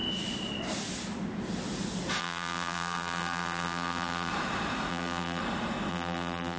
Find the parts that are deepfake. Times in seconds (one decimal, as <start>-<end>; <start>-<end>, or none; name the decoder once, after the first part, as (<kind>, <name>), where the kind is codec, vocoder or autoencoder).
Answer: 2.2-4.3 (vocoder, BigVGAN v2); 4.9-5.4; 5.9-6.6